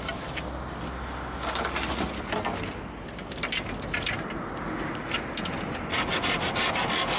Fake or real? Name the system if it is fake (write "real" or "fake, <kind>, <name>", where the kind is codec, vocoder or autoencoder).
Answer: real